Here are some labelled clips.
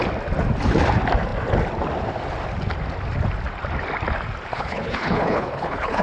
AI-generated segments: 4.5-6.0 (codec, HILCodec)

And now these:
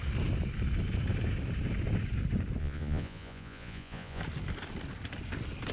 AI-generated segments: 2.6-4.2 (vocoder, Vocos)

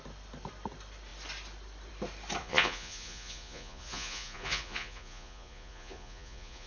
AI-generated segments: 2.4-6.7 (vocoder, Vocos)

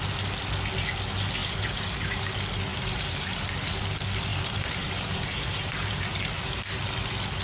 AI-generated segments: 1.4-2.3 (vocoder, BigVGAN v2); 2.7-3.4; 4.3-6.6

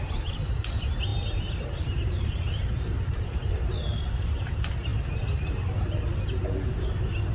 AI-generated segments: none

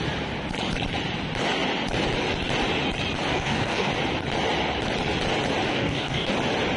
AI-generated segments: 3.3-3.9 (codec, DAC); 5.7-6.3